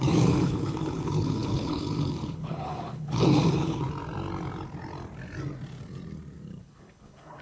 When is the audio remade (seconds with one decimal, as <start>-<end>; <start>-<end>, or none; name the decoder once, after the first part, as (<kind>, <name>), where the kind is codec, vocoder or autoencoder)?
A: 0.0-3.8 (codec, HILCodec); 6.6-7.4